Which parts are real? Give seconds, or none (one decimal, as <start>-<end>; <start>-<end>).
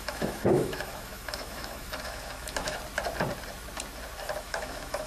2.8-4.4